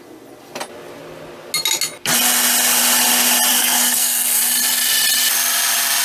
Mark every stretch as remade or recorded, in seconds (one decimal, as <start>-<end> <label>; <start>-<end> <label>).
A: 0.0-3.5 recorded; 3.5-4.4 remade; 4.4-6.0 recorded